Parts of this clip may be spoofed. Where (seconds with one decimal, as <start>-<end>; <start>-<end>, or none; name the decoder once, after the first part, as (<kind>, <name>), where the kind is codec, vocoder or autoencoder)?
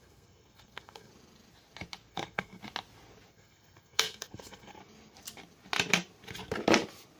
0.0-1.1 (codec, SNAC); 2.1-2.6; 3.3-4.8